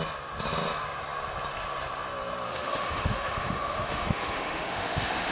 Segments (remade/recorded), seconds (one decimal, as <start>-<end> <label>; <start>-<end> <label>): 0.0-2.5 recorded; 2.5-5.3 remade